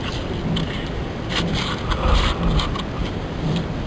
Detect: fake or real real